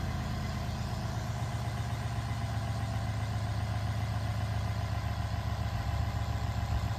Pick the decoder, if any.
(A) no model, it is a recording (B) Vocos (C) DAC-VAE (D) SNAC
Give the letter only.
A